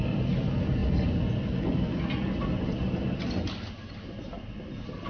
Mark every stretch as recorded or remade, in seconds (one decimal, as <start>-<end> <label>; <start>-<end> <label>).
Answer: 0.0-5.1 recorded